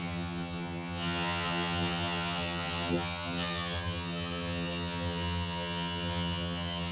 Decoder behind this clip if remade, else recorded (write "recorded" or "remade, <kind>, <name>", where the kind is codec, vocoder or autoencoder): remade, vocoder, HiFi-GAN